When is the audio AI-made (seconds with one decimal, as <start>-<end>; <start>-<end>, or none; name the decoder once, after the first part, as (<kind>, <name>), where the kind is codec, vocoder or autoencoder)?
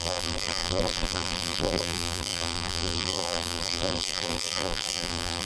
0.0-5.5 (vocoder, BigVGAN v2)